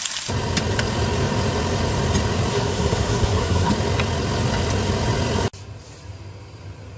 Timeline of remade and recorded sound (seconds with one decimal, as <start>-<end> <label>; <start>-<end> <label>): 0.0-2.5 recorded; 2.5-3.7 remade; 3.7-7.0 recorded